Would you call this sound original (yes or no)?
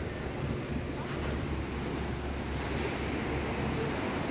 yes